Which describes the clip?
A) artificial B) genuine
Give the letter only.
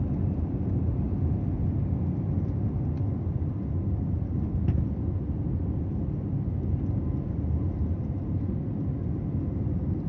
B